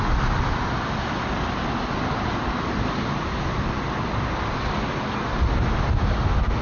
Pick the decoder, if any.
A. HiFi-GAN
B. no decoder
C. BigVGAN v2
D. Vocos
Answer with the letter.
B